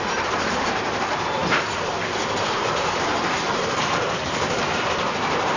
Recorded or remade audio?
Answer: remade